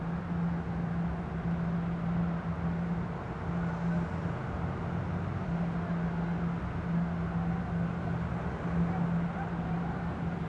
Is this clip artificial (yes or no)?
no